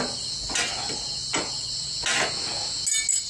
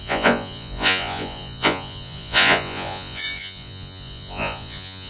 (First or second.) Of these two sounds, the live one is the first